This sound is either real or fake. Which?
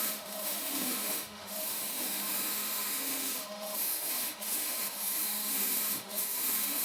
fake